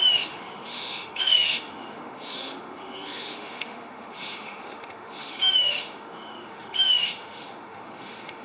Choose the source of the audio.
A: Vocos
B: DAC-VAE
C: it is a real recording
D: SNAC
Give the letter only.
B